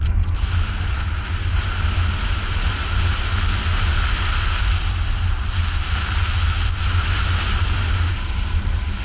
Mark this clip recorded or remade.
recorded